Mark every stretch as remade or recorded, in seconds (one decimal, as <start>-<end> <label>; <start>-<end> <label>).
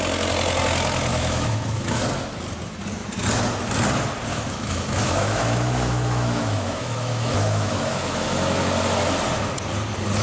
0.0-1.1 recorded; 1.1-2.0 remade; 2.0-4.3 recorded; 4.3-8.7 remade; 8.7-10.2 recorded